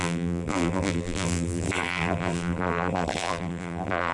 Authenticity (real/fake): fake